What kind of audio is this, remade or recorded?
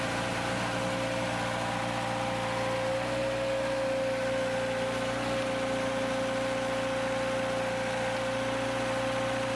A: recorded